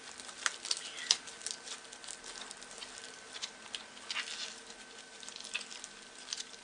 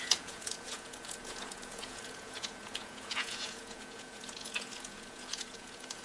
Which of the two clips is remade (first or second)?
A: second